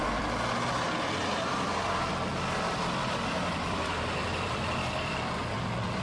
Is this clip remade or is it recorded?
recorded